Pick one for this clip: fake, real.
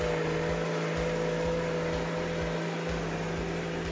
real